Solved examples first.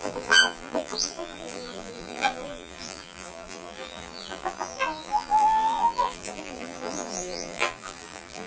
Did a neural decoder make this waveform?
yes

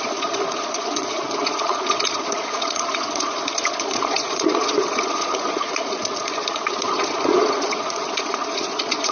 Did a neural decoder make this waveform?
yes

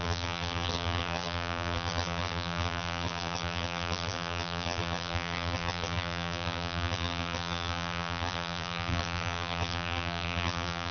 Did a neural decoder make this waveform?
yes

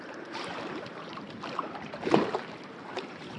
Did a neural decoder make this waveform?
yes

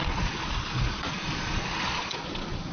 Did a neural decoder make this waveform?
yes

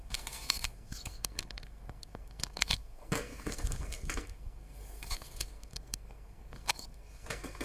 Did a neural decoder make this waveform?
yes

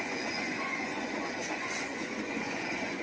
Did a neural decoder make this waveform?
yes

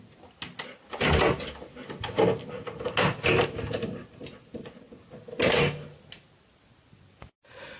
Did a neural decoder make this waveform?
no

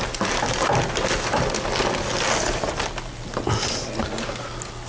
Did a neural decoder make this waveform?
no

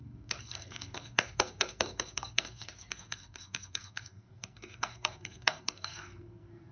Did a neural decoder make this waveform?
yes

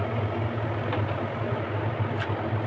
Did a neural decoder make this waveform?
no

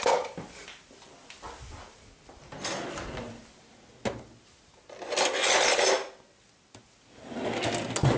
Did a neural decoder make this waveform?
no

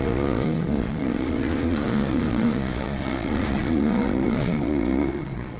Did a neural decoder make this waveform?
yes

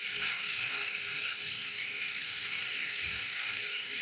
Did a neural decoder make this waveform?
yes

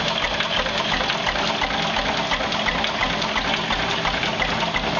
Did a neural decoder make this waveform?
no